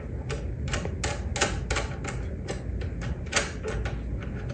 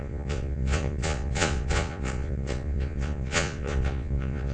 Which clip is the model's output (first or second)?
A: second